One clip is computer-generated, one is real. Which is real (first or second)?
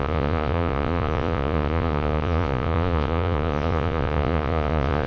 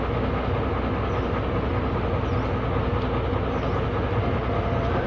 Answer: second